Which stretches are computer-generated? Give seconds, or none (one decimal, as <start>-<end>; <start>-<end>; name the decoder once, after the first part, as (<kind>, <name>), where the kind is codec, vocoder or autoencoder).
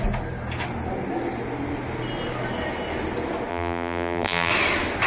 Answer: 3.5-4.5 (vocoder, BigVGAN v2)